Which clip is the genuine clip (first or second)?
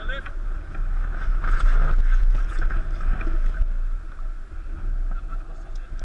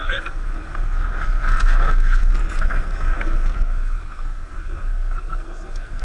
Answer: first